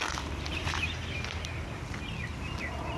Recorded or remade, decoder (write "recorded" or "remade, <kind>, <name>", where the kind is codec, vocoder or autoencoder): recorded